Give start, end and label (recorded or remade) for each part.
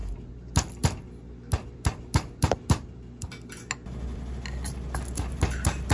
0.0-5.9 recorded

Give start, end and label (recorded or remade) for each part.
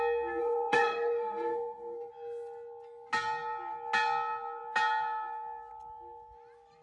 0.0-0.4 recorded; 0.4-2.1 remade; 2.1-6.8 recorded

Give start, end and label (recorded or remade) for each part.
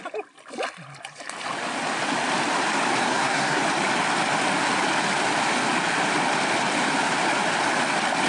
0.0-3.0 recorded; 3.0-3.6 remade; 3.6-8.3 recorded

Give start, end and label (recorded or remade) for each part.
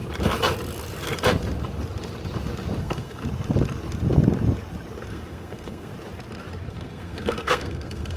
0.0-2.8 recorded; 2.8-3.2 remade; 3.2-5.1 recorded; 5.1-5.9 remade; 5.9-6.7 recorded; 6.7-8.2 remade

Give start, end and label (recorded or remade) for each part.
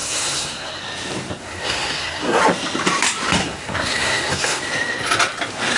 0.0-0.8 remade; 0.8-1.4 recorded; 1.4-2.4 remade; 2.4-3.4 recorded; 3.4-4.6 remade; 4.6-5.8 recorded